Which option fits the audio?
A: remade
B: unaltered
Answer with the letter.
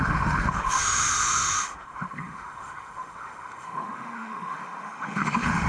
A